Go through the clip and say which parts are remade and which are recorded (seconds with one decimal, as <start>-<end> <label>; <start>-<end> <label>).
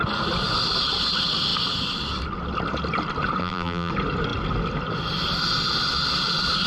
0.0-3.4 recorded; 3.4-3.9 remade; 3.9-6.7 recorded